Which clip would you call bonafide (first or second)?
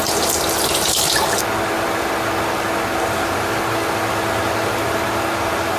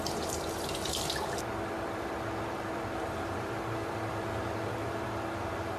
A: first